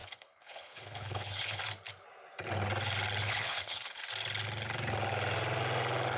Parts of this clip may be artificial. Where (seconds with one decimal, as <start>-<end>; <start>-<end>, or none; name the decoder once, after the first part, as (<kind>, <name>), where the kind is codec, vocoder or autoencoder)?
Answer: 0.0-1.6 (codec, HILCodec); 3.2-4.0